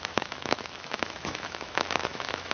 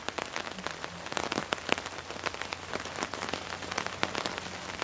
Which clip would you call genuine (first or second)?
second